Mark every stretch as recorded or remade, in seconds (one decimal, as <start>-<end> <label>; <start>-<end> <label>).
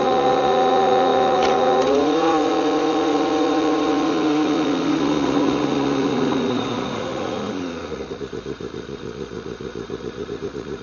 0.0-10.8 remade